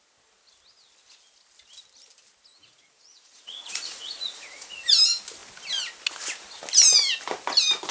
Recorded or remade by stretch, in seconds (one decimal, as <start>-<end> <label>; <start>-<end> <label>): 0.0-2.5 recorded; 2.5-4.8 remade; 4.8-7.9 recorded